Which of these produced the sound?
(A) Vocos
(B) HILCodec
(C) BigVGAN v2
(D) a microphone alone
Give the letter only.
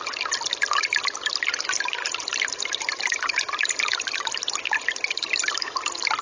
D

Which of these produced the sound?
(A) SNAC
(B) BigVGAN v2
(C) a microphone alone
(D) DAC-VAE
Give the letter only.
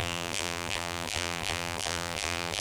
B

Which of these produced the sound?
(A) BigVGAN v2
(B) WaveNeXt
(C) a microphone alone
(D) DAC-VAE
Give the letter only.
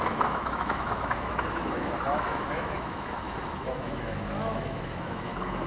D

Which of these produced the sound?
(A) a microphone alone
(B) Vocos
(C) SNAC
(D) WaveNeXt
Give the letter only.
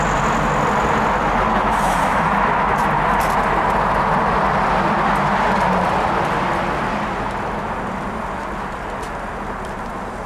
A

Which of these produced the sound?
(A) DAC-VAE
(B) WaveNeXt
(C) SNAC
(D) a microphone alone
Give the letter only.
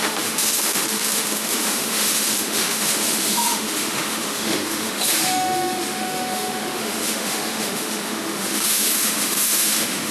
A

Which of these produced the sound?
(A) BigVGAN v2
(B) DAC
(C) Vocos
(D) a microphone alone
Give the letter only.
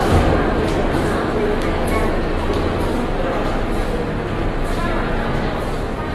D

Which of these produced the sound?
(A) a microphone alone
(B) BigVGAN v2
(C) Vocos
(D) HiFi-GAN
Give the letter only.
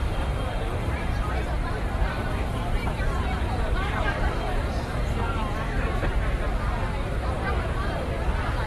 B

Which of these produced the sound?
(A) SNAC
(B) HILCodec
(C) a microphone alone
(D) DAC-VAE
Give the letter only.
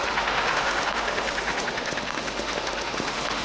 D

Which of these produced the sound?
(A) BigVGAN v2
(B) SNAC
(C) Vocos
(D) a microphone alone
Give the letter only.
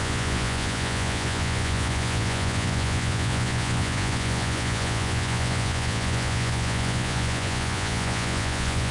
C